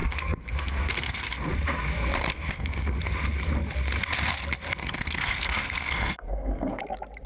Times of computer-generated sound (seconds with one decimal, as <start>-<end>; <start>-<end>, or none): 0.0-1.3; 2.3-3.0; 4.8-6.8